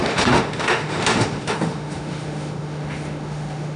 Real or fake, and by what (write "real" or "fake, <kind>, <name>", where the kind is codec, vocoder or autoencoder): fake, autoencoder, DAC-VAE